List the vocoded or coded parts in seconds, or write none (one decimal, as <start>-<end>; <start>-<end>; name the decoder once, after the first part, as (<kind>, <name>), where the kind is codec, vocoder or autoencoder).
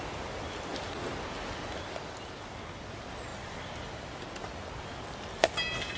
3.3-4.0 (vocoder, BigVGAN v2)